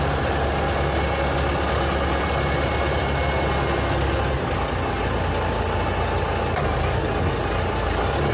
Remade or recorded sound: recorded